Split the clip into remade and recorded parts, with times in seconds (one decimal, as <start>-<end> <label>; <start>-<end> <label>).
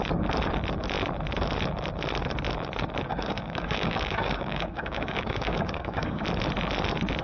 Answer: 0.0-3.1 recorded; 3.1-6.2 remade; 6.2-7.2 recorded